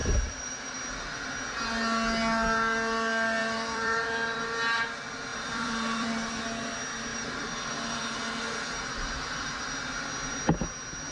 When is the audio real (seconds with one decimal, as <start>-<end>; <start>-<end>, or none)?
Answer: 0.6-3.4; 4.4-5.3; 6.3-7.1; 8.0-11.1

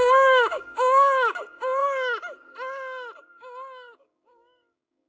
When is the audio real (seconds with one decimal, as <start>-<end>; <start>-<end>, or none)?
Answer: 1.8-3.2